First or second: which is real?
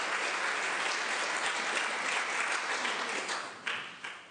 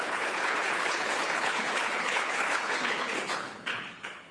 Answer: first